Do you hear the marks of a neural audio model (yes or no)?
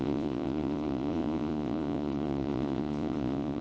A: yes